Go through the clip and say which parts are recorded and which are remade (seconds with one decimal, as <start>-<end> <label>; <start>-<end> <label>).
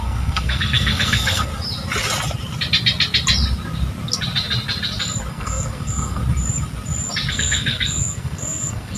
0.0-1.5 remade; 1.5-5.3 recorded; 5.3-6.2 remade; 6.2-7.3 recorded; 7.3-9.0 remade